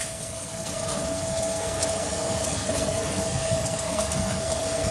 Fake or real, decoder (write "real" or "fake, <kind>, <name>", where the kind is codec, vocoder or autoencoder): fake, codec, SNAC